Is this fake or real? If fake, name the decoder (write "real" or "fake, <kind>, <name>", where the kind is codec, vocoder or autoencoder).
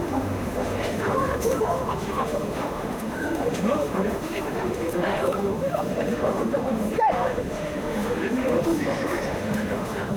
fake, autoencoder, DAC-VAE